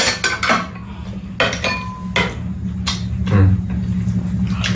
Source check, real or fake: real